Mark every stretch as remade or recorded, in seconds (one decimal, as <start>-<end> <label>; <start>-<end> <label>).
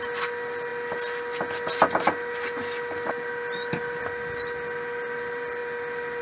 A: 0.0-6.2 recorded